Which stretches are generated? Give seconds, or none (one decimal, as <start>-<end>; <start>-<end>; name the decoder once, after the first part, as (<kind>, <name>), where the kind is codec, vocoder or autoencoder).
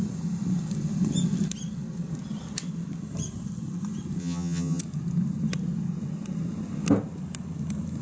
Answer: 4.2-4.8 (vocoder, HiFi-GAN)